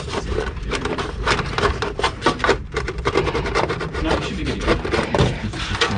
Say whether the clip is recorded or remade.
remade